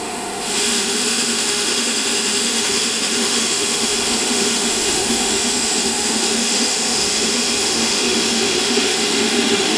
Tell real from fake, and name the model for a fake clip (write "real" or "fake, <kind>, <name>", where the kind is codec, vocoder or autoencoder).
fake, autoencoder, DAC-VAE